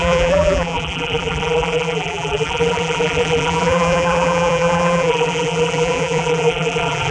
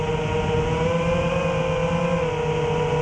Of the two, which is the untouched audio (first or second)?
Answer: second